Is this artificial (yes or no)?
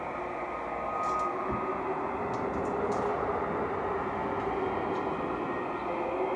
no